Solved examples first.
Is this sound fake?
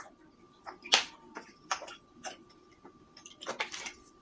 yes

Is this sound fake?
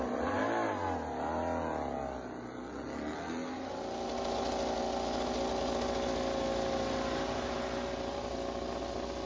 no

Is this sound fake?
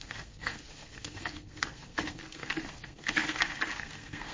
yes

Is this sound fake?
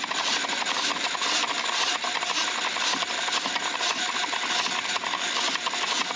no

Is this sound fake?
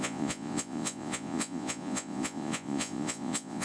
yes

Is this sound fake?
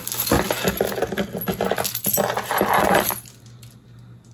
no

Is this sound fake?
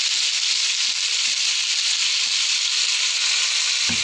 no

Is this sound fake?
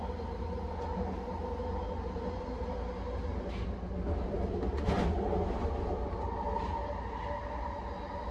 no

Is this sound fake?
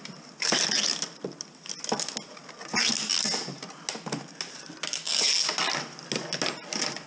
no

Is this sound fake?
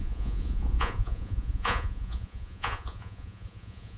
yes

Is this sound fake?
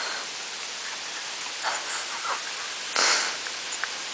no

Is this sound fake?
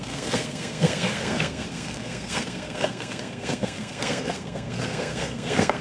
yes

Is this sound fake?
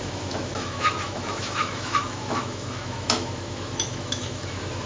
yes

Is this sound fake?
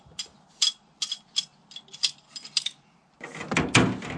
no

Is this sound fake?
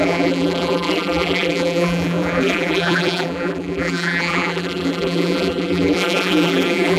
yes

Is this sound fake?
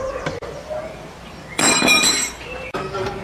yes